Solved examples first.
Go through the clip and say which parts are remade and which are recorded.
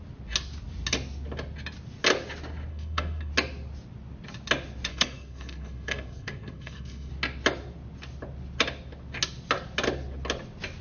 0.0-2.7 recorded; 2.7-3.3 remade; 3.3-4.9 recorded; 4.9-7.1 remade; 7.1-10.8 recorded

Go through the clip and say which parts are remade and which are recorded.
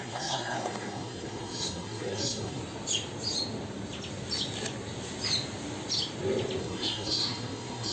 0.0-2.6 remade; 2.6-6.6 recorded; 6.6-7.9 remade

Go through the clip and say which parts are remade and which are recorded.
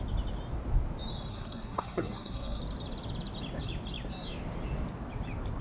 0.0-1.3 recorded; 1.3-2.6 remade; 2.6-5.6 recorded